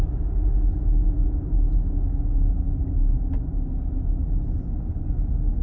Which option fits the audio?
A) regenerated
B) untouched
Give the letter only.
B